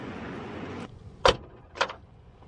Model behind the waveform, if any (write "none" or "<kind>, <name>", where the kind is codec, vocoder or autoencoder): vocoder, Vocos